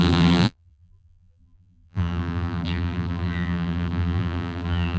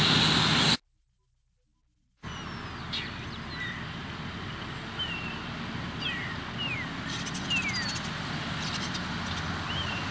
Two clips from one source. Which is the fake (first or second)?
first